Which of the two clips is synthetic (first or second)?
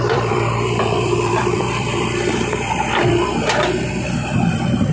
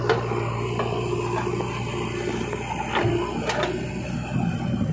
first